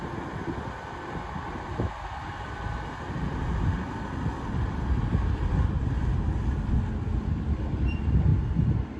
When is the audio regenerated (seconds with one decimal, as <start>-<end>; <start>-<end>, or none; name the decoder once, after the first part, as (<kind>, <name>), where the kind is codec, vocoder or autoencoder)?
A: none

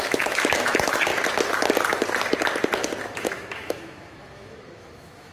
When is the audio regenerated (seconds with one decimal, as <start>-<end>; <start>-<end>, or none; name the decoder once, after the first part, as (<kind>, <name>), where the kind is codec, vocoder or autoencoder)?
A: 0.0-1.1 (autoencoder, DAC-VAE); 3.0-5.3

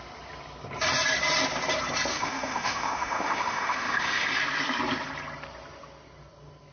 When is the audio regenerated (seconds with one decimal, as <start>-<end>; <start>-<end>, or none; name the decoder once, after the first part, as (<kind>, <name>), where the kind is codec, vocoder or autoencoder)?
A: 2.1-4.4 (autoencoder, DAC-VAE)

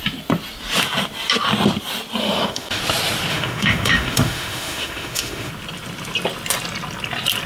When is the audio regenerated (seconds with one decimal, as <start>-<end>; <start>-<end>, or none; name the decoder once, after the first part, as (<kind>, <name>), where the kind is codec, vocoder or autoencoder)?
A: 2.2-2.8 (autoencoder, DAC-VAE); 3.3-5.5

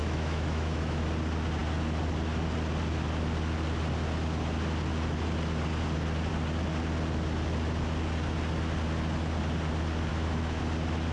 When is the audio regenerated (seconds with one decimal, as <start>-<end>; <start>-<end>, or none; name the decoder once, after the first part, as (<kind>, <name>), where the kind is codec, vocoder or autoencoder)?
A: 0.0-1.0 (autoencoder, DAC-VAE); 10.1-10.6

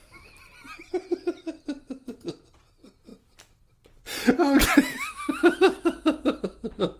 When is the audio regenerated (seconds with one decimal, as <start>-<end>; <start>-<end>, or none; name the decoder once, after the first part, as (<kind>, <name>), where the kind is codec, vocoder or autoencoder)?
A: none

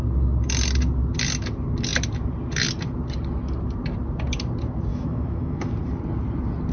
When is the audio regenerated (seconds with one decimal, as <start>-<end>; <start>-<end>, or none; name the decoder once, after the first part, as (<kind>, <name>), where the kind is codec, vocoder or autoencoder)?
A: 4.9-5.7 (autoencoder, DAC-VAE)

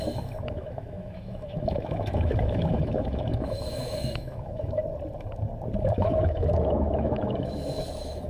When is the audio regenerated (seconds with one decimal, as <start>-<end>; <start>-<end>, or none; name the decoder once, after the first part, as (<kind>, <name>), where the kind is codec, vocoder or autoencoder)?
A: 0.0-4.8 (autoencoder, DAC-VAE); 5.8-8.3